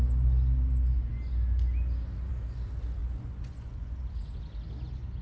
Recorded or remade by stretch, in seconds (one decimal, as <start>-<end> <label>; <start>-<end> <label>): 0.0-3.0 recorded; 3.0-3.9 remade; 3.9-5.2 recorded